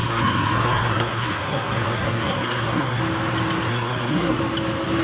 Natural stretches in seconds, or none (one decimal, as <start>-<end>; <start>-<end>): 3.0-3.7; 4.4-5.0